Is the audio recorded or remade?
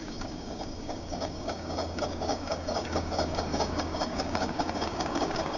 remade